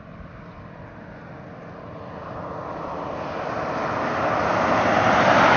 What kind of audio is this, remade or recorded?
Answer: recorded